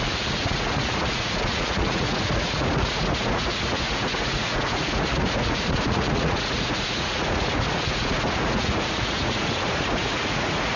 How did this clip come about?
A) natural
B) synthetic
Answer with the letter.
B